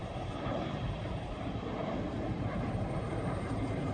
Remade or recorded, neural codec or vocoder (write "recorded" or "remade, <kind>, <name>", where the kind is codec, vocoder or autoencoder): remade, vocoder, BigVGAN v2